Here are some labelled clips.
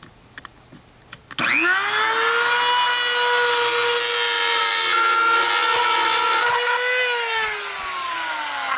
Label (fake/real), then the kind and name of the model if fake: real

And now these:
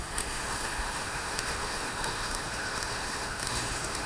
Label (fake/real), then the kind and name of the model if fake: fake, autoencoder, DAC-VAE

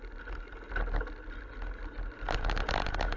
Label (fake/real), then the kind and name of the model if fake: real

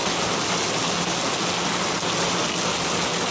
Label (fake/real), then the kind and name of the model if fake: real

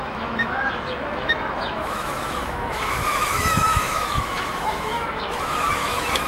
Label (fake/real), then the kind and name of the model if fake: fake, autoencoder, DAC-VAE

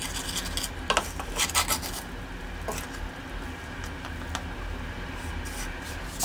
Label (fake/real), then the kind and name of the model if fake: real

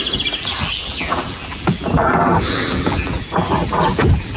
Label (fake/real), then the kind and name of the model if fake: fake, vocoder, BigVGAN v2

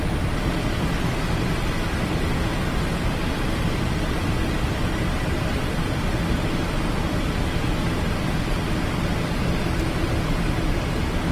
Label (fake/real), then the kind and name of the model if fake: real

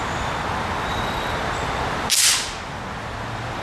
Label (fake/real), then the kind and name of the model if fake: real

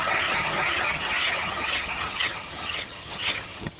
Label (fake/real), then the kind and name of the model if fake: fake, vocoder, HiFi-GAN